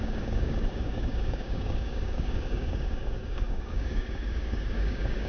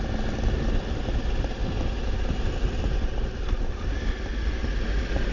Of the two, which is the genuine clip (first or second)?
second